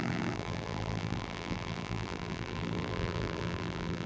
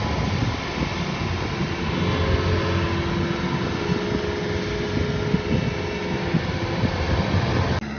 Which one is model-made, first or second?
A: first